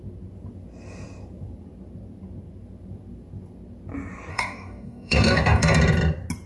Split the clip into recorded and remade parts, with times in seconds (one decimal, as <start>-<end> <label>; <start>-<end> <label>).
0.0-4.3 recorded; 4.3-5.8 remade; 5.8-6.5 recorded